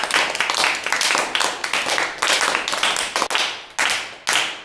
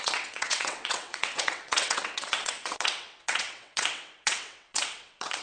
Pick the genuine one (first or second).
first